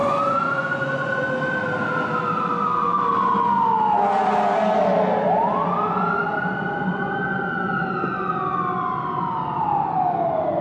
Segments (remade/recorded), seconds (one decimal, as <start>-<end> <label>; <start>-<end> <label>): 0.0-1.3 remade; 1.3-10.6 recorded